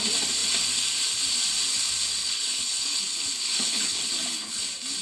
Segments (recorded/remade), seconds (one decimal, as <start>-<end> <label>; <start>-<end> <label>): 0.0-2.2 recorded; 2.2-4.6 remade; 4.6-5.0 recorded